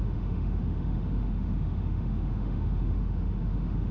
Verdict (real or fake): fake